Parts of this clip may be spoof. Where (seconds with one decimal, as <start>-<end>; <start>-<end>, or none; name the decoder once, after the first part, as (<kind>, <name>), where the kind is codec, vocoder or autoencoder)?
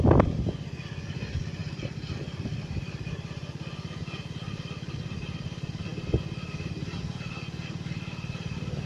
none